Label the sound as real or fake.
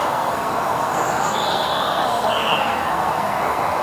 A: fake